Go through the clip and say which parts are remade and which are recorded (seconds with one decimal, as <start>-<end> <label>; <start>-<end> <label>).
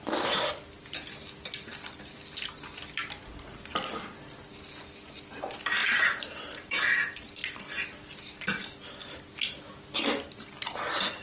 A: 0.0-5.8 recorded; 5.8-6.7 remade; 6.7-11.2 recorded